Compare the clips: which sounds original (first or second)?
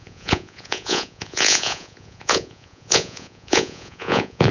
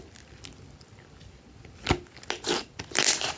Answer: second